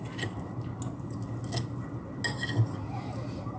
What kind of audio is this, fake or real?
real